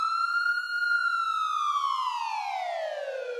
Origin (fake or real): real